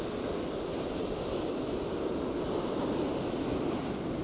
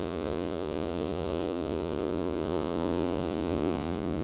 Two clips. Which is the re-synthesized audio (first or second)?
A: second